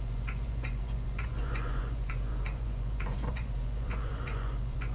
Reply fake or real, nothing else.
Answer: fake